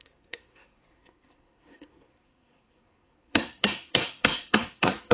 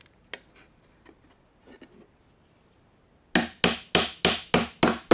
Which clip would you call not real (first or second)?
first